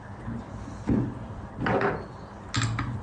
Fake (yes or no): no